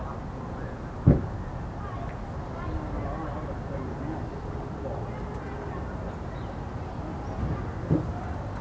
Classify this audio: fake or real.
real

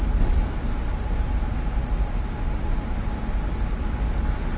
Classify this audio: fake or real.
real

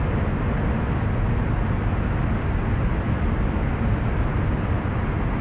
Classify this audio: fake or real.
real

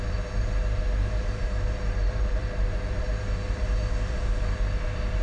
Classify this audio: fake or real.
fake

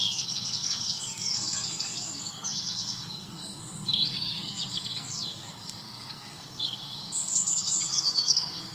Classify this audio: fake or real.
fake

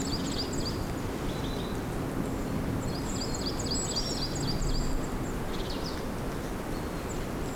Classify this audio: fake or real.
real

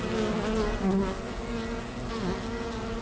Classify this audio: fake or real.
real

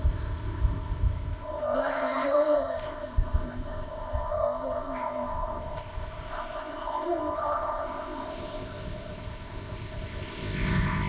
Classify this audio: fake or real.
fake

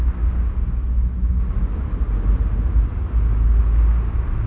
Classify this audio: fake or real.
real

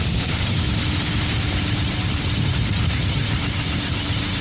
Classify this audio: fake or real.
fake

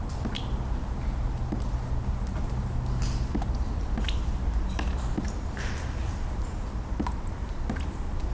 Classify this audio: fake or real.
real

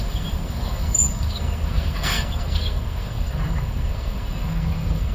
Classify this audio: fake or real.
fake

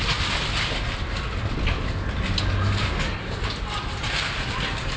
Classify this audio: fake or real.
real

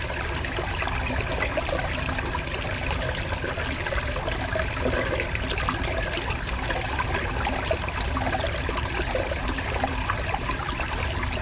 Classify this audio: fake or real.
real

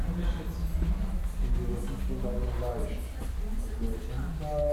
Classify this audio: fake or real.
real